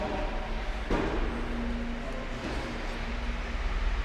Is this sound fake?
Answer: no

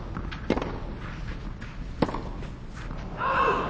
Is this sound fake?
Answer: no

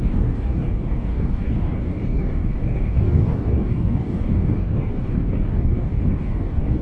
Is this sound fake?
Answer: yes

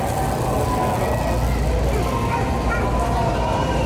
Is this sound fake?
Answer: no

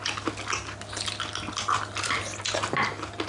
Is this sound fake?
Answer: no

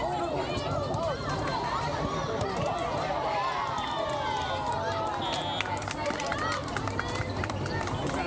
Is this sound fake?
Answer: no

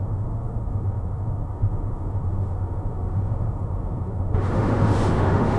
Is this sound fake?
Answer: yes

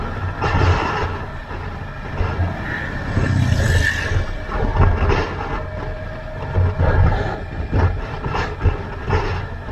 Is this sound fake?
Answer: no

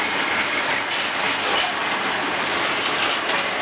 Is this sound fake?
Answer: no